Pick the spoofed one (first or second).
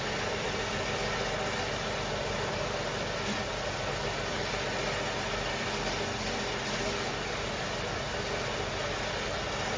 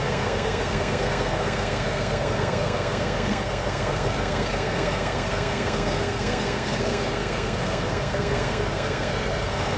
second